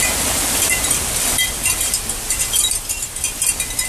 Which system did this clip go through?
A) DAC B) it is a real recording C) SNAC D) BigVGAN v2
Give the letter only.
D